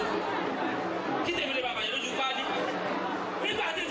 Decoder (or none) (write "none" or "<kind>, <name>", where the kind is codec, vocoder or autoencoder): none